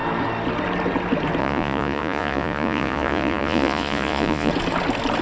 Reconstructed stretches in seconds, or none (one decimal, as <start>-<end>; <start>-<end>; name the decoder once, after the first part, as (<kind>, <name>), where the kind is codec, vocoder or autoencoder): 1.4-4.5 (vocoder, Vocos)